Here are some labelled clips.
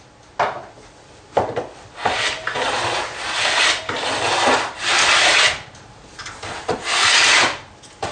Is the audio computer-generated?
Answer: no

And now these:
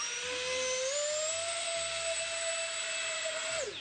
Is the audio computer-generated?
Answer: no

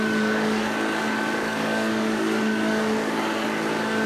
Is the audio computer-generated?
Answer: yes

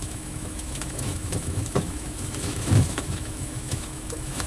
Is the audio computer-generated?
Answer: yes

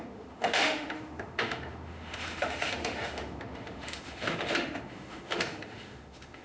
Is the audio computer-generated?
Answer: yes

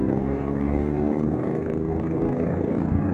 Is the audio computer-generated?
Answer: yes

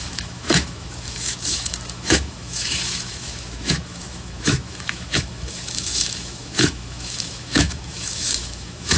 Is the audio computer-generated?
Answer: yes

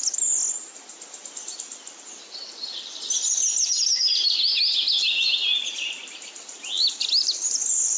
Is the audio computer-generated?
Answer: no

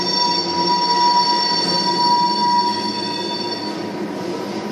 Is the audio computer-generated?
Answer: no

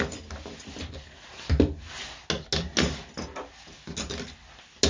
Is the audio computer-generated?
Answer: no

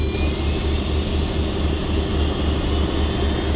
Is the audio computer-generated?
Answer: no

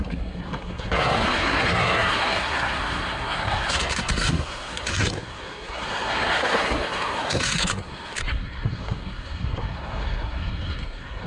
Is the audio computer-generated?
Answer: yes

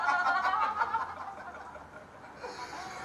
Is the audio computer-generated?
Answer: no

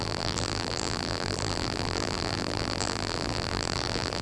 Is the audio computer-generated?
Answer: yes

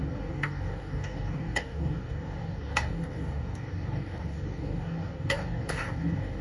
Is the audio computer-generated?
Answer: yes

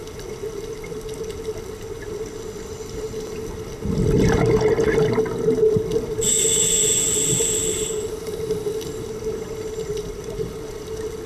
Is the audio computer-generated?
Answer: no